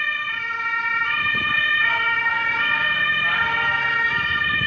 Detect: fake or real real